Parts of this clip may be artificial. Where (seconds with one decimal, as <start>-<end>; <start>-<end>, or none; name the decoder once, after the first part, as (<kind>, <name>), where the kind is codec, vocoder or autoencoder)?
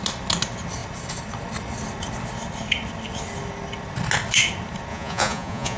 4.9-5.8 (vocoder, Vocos)